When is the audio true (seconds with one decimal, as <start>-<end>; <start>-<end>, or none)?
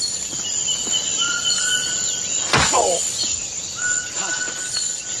0.0-5.2